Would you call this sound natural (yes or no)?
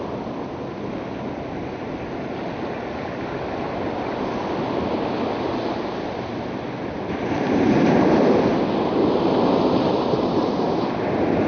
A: yes